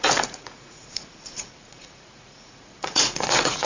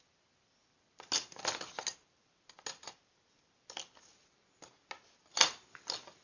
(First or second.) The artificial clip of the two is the first